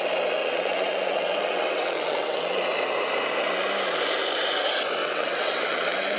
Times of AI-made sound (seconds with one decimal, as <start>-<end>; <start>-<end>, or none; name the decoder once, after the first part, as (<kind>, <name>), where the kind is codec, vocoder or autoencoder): 0.4-2.6 (vocoder, WaveNeXt); 5.0-6.2